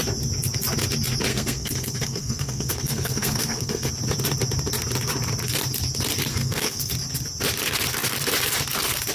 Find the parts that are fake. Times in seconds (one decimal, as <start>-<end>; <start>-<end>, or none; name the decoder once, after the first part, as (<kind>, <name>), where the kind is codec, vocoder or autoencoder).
1.3-3.9 (codec, SNAC); 6.3-6.9